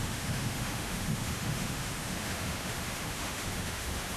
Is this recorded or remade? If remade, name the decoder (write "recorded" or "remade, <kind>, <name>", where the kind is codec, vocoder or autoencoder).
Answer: remade, autoencoder, DAC-VAE